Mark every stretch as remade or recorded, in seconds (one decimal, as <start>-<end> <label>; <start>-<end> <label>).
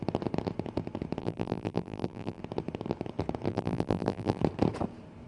0.0-1.2 recorded; 1.2-2.4 remade; 2.4-3.5 recorded; 3.5-4.4 remade; 4.4-5.3 recorded